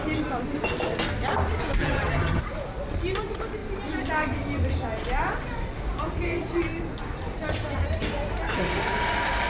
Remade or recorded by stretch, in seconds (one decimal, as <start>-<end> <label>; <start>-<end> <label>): 0.0-1.8 recorded; 1.8-2.4 remade; 2.4-9.5 recorded